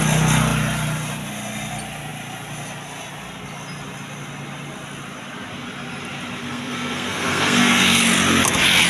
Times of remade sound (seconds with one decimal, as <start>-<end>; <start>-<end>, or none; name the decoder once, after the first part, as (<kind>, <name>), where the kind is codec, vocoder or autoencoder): 6.4-8.0 (codec, SNAC)